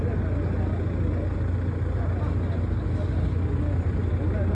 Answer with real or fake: real